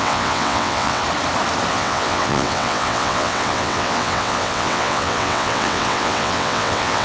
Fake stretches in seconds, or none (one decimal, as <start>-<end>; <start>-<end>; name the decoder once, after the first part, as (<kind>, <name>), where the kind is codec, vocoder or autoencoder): 0.0-1.0 (vocoder, WaveNeXt); 1.7-7.0